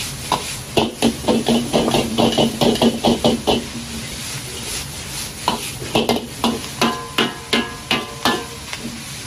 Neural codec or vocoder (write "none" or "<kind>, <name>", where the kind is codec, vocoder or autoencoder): none